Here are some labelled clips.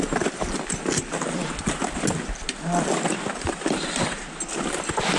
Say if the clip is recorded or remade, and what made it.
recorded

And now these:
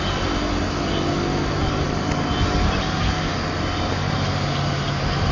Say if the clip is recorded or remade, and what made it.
recorded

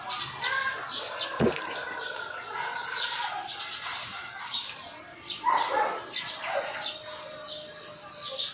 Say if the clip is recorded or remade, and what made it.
recorded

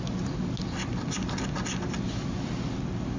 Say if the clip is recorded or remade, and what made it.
recorded